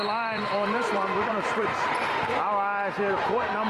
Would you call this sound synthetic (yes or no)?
yes